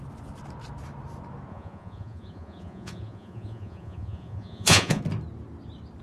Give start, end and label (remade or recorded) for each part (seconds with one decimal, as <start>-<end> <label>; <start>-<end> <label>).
0.0-1.5 recorded; 1.5-5.0 remade; 5.0-6.0 recorded